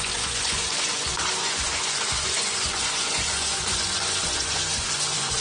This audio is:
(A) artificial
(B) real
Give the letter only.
A